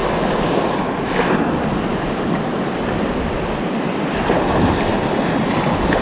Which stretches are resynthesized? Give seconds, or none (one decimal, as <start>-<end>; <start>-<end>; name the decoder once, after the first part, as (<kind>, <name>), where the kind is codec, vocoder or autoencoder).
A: none